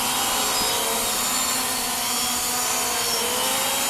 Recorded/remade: recorded